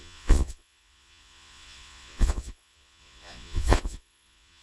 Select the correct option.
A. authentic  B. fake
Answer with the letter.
B